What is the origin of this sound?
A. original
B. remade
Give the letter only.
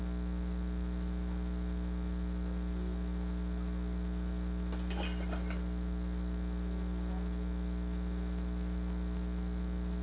A